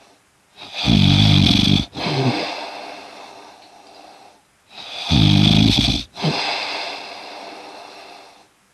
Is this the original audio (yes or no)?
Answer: yes